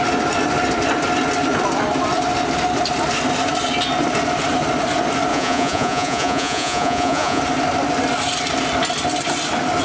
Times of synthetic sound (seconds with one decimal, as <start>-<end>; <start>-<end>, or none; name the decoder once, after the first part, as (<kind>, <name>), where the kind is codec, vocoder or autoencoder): 5.3-7.4 (vocoder, Vocos)